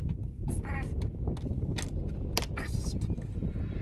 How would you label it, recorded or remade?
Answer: recorded